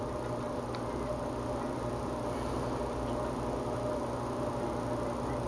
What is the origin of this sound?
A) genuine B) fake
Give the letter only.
A